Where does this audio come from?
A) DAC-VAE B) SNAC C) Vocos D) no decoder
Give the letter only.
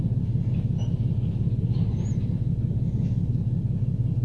D